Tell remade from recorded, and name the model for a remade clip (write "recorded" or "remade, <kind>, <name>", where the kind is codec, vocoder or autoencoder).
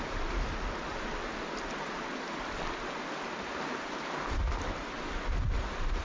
recorded